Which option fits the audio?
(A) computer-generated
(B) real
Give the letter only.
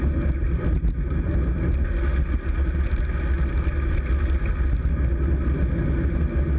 B